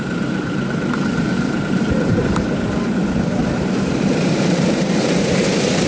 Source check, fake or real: fake